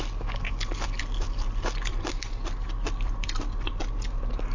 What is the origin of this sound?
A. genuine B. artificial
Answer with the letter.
A